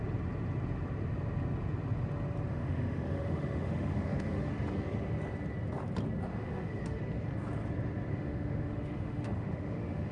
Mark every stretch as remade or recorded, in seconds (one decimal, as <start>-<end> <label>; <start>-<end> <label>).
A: 0.0-2.5 recorded; 2.5-4.5 remade; 4.5-6.3 recorded; 6.3-7.0 remade; 7.0-8.1 recorded; 8.1-10.1 remade